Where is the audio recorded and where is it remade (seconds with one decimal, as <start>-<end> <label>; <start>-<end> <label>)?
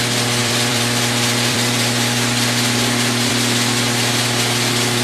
0.0-0.4 recorded; 0.4-3.3 remade; 3.3-5.0 recorded